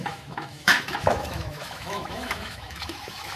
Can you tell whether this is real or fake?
fake